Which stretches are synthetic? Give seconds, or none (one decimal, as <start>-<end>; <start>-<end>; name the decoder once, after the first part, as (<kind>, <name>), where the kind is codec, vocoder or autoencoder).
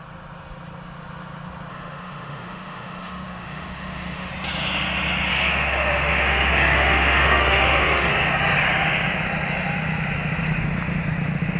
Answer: 1.7-4.3 (autoencoder, DAC-VAE); 5.3-8.1